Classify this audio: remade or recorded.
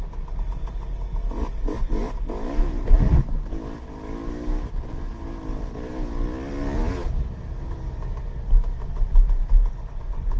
recorded